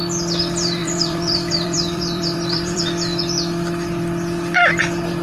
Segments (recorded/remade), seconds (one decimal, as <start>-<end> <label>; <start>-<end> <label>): 0.0-0.8 recorded; 0.8-2.8 remade; 2.8-5.2 recorded